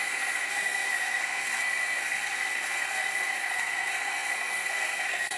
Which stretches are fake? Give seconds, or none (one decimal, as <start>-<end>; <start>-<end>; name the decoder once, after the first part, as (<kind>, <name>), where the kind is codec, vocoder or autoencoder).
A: 0.0-5.4 (codec, SNAC)